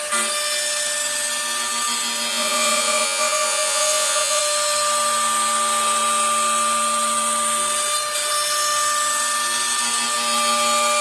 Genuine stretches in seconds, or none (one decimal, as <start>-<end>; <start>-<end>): 0.0-2.3; 4.4-11.0